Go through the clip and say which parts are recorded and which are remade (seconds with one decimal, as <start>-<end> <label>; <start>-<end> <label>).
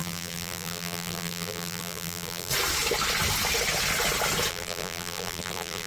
0.0-2.5 remade; 2.5-4.5 recorded; 4.5-5.9 remade